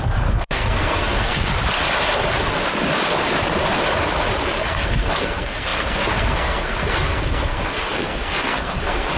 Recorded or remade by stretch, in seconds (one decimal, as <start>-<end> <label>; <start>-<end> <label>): 0.0-1.5 remade; 1.5-4.6 recorded; 4.6-9.2 remade